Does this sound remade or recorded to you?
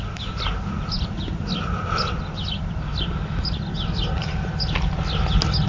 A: recorded